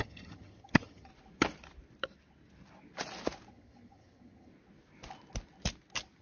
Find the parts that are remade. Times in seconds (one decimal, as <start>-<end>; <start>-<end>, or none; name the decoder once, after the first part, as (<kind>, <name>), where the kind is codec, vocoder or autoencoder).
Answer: 0.0-1.1 (vocoder, HiFi-GAN); 3.5-4.5